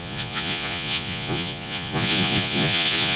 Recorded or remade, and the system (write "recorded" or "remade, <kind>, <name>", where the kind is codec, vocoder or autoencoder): remade, vocoder, Vocos